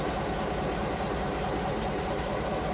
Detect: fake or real fake